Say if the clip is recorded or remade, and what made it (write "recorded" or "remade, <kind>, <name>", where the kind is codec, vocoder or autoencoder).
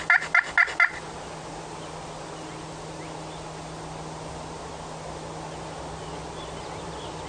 recorded